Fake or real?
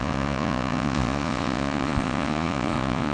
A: fake